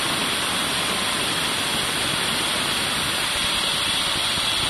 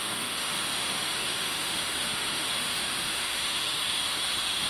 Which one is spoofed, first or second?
second